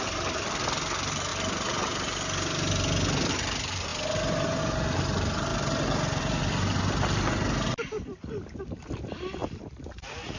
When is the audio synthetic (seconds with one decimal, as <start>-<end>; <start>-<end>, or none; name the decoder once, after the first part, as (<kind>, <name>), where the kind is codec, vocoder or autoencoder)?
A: 0.0-1.3 (vocoder, BigVGAN v2); 3.3-3.9; 4.6-5.5; 6.2-10.4